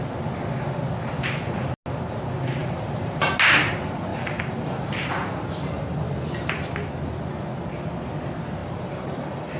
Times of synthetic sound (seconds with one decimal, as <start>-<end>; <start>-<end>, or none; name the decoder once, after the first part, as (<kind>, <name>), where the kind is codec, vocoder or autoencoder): 2.6-3.3 (vocoder, BigVGAN v2); 4.1-4.9; 8.6-9.6